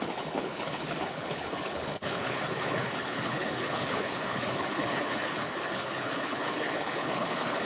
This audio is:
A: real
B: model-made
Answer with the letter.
B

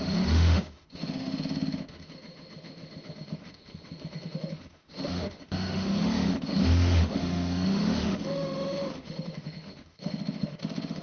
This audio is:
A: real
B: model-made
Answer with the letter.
B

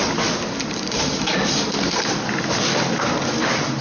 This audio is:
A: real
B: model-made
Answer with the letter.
A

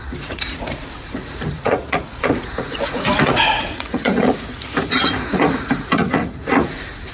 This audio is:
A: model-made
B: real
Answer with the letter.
A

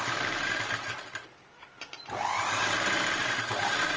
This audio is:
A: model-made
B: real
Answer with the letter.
B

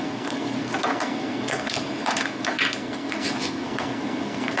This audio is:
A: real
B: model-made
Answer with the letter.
B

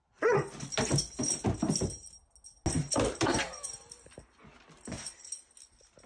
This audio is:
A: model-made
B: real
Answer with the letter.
B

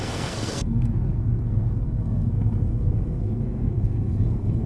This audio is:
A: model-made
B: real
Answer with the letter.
A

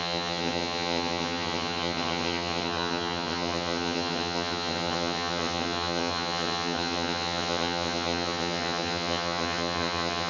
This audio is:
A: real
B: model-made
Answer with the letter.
B